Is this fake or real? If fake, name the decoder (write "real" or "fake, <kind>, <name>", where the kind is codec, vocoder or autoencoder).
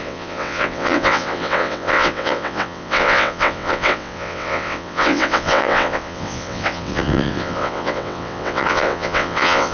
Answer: fake, vocoder, WaveNeXt